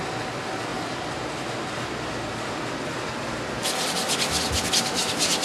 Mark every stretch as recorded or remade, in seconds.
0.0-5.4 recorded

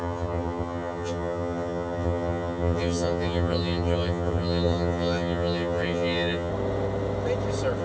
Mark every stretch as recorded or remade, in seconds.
0.0-6.5 remade; 6.5-7.8 recorded